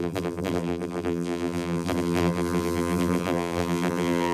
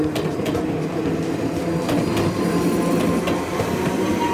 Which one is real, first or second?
second